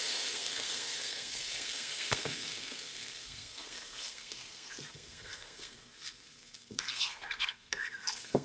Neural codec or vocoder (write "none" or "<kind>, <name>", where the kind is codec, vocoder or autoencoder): codec, SNAC